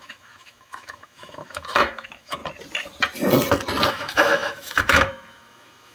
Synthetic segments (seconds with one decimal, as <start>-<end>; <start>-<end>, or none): 0.0-2.4; 3.9-5.9